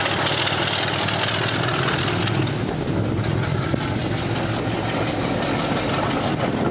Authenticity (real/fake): real